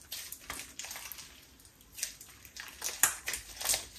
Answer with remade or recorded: recorded